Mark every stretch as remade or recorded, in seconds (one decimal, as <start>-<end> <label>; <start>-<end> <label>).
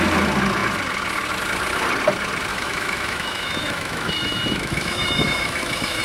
0.0-2.5 recorded; 2.5-6.0 remade